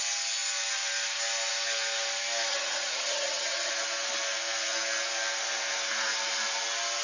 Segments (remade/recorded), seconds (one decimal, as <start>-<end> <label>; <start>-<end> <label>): 0.0-2.5 recorded; 2.5-3.7 remade; 3.7-7.0 recorded